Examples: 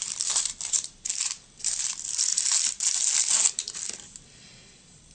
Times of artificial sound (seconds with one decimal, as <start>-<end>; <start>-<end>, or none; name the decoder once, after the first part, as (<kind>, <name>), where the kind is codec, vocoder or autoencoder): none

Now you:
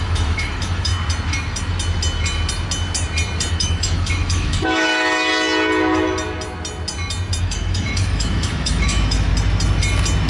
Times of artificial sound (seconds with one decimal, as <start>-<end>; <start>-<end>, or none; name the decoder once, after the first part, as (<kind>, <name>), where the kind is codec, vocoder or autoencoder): 0.0-0.9 (autoencoder, DAC-VAE); 3.5-5.3; 7.4-9.3

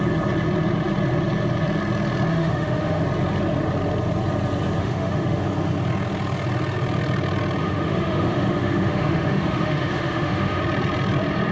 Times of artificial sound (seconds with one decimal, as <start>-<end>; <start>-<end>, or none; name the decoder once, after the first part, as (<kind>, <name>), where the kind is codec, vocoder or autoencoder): 2.3-3.0 (autoencoder, DAC-VAE); 4.8-5.4; 7.6-10.6

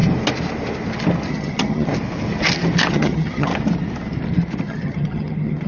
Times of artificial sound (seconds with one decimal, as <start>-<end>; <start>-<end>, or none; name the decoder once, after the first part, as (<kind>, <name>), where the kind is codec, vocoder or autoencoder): 1.3-1.9 (vocoder, HiFi-GAN); 2.9-3.5; 4.6-5.7

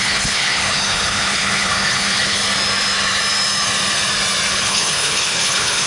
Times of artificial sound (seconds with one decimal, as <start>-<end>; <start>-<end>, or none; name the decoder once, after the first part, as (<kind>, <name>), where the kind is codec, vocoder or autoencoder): 0.0-2.4 (codec, HILCodec); 4.5-5.9

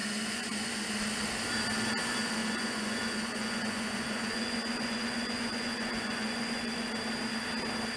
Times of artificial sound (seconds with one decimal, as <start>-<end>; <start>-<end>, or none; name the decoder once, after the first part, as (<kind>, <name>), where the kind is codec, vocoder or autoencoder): 0.0-0.7 (vocoder, Vocos); 2.4-6.9